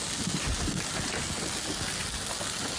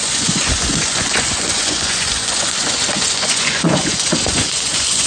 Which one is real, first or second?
first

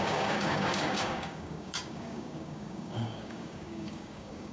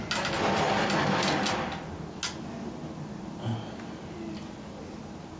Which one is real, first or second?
second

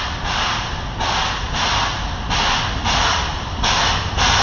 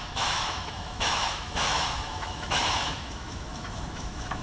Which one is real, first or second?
first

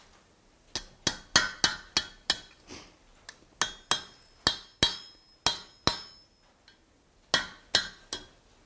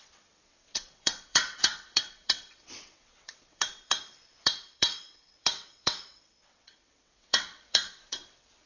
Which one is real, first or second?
first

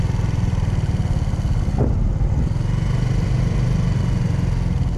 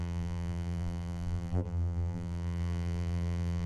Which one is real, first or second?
first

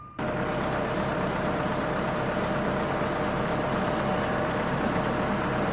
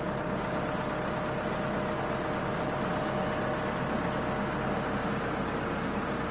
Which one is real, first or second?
second